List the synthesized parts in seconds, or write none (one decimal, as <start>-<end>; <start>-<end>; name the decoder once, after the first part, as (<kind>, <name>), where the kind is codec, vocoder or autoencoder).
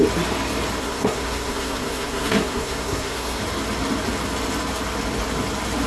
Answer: 0.8-3.4 (codec, SNAC)